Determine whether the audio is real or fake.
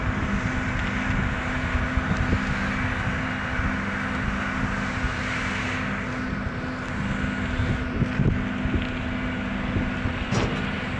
real